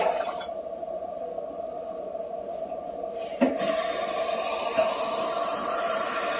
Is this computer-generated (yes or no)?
yes